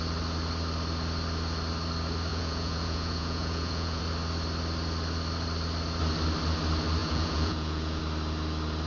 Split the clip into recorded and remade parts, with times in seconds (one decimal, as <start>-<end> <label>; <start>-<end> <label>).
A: 0.0-2.3 recorded; 2.3-4.0 remade; 4.0-7.0 recorded; 7.0-8.0 remade; 8.0-8.9 recorded

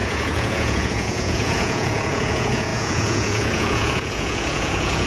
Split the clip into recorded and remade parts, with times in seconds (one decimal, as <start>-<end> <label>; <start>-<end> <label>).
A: 0.0-5.1 remade

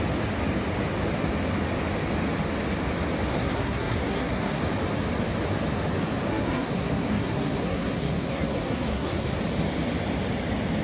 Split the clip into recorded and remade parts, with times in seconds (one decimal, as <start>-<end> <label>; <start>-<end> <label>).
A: 0.0-3.3 recorded; 3.3-4.6 remade; 4.6-6.3 recorded; 6.3-9.4 remade; 9.4-10.8 recorded